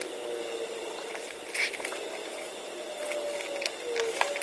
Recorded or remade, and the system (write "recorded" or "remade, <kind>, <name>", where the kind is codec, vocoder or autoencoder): recorded